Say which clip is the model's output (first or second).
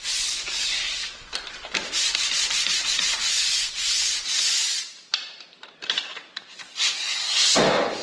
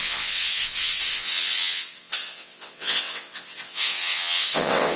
second